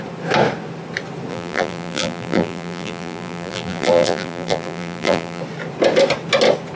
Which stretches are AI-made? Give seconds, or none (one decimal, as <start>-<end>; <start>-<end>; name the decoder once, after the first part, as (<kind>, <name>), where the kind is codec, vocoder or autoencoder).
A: 1.3-5.4 (vocoder, BigVGAN v2)